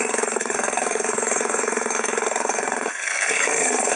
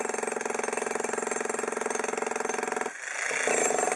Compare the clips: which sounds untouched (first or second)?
second